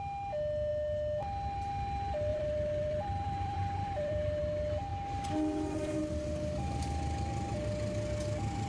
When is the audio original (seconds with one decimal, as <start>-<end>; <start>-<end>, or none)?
0.0-2.3; 4.4-8.7